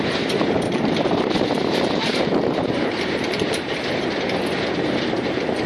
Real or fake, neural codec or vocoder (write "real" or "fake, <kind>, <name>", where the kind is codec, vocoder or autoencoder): fake, vocoder, BigVGAN v2